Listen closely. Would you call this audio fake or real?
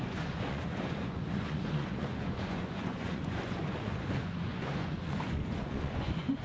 fake